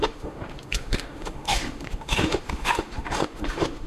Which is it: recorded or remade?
remade